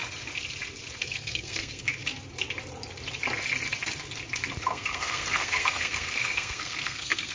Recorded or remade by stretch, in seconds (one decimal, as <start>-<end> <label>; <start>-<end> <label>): 0.0-1.0 recorded; 1.0-1.9 remade; 1.9-4.6 recorded; 4.6-7.3 remade